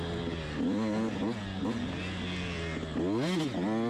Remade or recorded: recorded